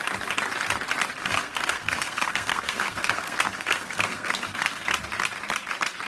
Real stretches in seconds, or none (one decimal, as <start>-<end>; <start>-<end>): 0.0-1.2; 4.9-6.1